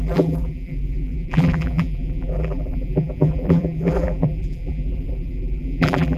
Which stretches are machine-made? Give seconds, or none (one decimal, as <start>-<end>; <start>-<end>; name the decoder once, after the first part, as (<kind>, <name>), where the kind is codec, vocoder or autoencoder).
0.0-6.2 (vocoder, BigVGAN v2)